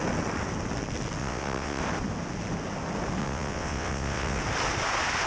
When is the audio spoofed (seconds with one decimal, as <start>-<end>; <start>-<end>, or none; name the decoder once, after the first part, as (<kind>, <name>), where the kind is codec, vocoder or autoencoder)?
1.2-1.8 (vocoder, WaveNeXt); 3.2-4.4